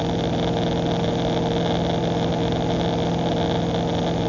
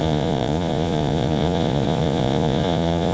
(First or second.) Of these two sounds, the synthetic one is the second